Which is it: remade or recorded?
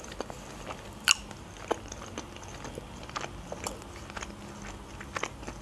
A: recorded